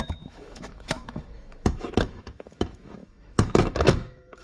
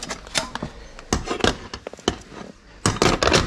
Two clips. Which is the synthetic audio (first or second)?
first